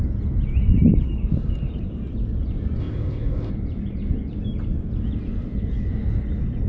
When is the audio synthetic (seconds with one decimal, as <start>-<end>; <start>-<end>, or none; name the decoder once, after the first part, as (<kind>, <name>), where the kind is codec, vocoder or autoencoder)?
2.8-3.5 (codec, ZipCodec)